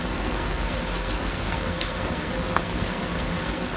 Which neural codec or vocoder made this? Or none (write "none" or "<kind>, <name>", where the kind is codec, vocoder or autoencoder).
codec, SNAC